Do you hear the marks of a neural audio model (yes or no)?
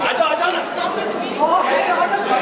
yes